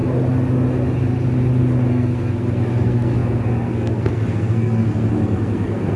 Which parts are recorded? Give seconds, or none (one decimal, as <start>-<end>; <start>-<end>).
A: 0.0-1.9